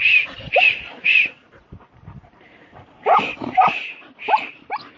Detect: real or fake fake